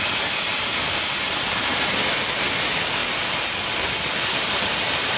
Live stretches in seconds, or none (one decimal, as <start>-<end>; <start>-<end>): 0.0-5.2